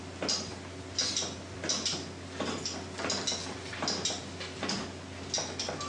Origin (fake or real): real